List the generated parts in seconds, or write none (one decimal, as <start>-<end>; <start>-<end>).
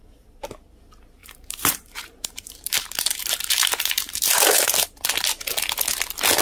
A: 1.2-5.0